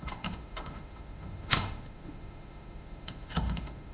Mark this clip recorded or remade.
remade